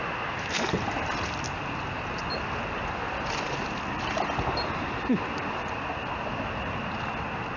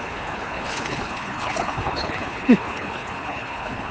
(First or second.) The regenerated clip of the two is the second